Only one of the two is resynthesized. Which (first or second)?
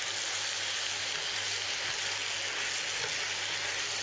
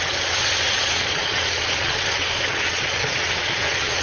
second